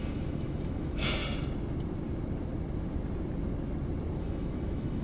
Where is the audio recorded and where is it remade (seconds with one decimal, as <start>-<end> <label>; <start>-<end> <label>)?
0.0-1.2 remade; 1.2-4.2 recorded; 4.2-5.0 remade